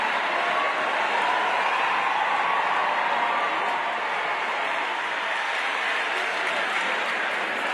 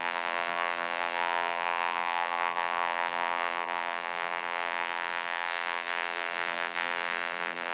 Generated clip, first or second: second